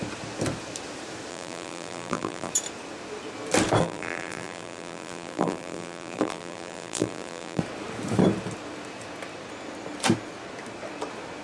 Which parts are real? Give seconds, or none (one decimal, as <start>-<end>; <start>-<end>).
0.0-1.3; 2.5-3.8; 7.6-11.4